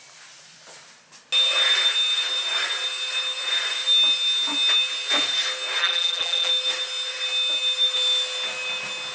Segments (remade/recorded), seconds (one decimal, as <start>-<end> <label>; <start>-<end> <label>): 0.0-5.8 recorded; 5.8-6.5 remade; 6.5-9.1 recorded